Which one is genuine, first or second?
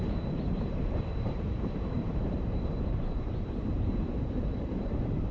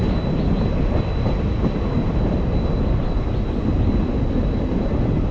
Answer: second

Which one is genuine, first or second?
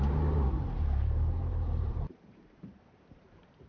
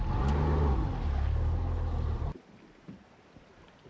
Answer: second